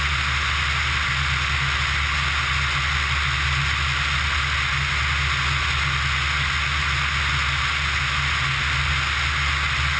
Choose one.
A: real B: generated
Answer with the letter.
A